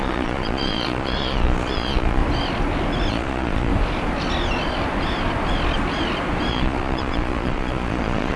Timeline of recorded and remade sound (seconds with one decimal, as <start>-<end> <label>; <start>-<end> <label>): 0.0-2.2 remade; 2.2-3.1 recorded; 3.1-3.7 remade; 3.7-6.5 recorded; 6.5-8.4 remade

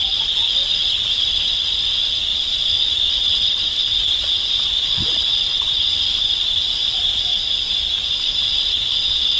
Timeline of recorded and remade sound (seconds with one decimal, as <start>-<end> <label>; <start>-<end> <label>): 0.0-0.4 remade; 0.4-2.9 recorded; 2.9-9.4 remade